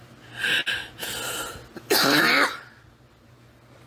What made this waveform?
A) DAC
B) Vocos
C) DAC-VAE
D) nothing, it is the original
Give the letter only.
D